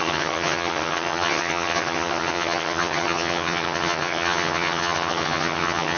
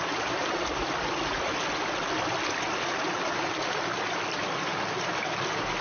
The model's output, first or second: first